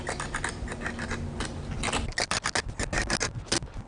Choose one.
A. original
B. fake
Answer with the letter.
A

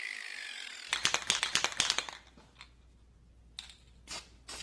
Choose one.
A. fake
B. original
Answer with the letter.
B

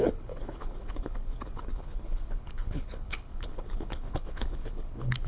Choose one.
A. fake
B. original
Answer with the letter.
A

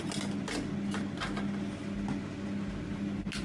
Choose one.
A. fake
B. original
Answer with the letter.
B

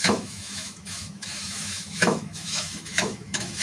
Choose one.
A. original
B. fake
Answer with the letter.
B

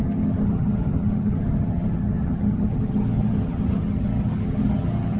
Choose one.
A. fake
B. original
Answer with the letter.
A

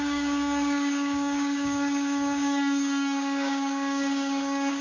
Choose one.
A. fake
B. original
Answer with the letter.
A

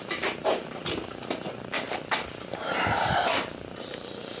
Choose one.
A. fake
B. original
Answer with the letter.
A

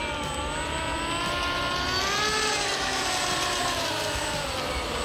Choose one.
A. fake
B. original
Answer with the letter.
B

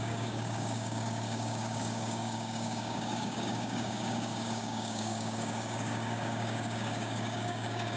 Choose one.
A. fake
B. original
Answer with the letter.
A